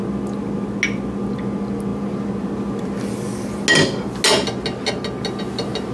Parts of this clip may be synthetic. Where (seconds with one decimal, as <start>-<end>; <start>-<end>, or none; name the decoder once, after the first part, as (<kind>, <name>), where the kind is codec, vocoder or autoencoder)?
none